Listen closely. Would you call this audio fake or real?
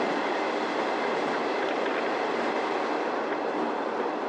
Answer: real